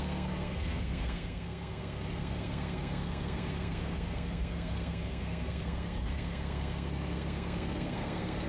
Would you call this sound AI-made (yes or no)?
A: yes